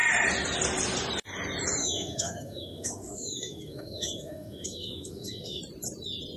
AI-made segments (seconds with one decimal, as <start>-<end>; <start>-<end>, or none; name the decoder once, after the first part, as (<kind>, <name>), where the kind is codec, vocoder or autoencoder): 1.8-5.6 (autoencoder, DAC-VAE)